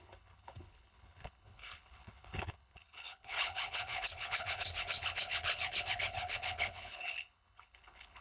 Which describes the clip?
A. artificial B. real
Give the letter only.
A